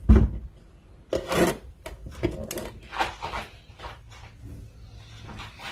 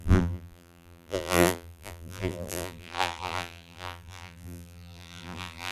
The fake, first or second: second